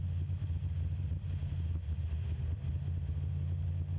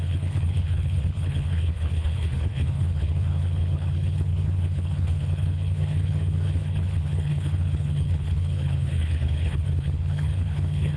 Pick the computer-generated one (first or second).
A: second